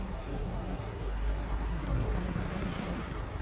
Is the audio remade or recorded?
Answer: remade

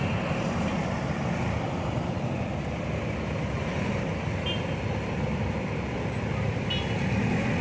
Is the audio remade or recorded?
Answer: recorded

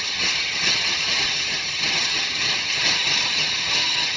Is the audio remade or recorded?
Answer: remade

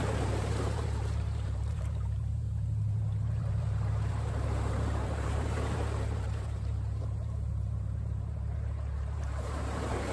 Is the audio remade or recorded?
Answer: remade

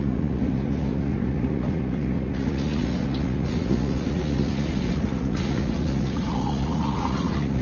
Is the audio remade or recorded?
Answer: remade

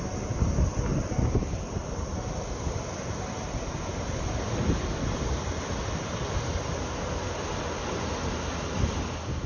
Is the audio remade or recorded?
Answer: recorded